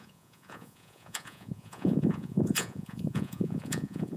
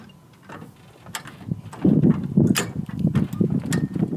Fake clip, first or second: first